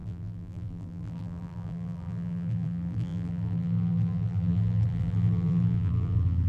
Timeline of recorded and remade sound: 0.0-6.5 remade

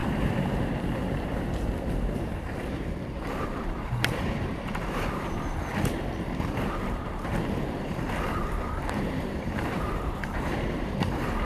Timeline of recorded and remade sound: 0.0-5.7 remade; 5.7-7.0 recorded; 7.0-11.4 remade

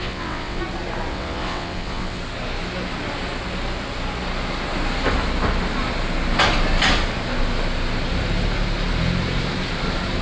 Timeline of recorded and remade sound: 0.0-0.6 remade; 0.6-1.1 recorded; 1.1-2.2 remade; 2.2-10.2 recorded

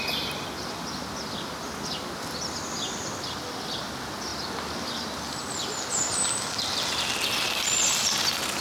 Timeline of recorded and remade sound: 0.0-8.6 recorded

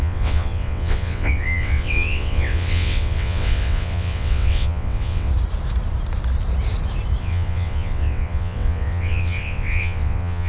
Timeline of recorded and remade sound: 0.0-5.3 remade; 5.3-7.2 recorded; 7.2-10.5 remade

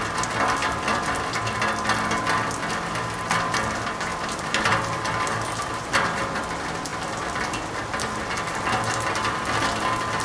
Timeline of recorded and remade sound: 0.0-0.6 recorded; 0.6-1.4 remade; 1.4-4.1 recorded; 4.1-6.4 remade; 6.4-6.9 recorded; 6.9-7.7 remade; 7.7-10.2 recorded

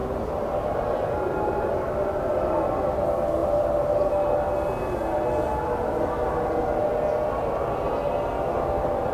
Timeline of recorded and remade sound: 0.0-1.9 remade; 1.9-2.3 recorded; 2.3-2.8 remade; 2.8-3.4 recorded; 3.4-4.1 remade; 4.1-9.1 recorded